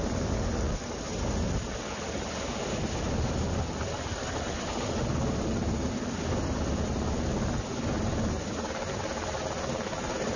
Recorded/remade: recorded